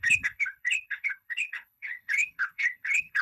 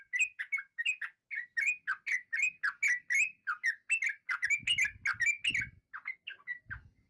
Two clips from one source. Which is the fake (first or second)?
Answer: first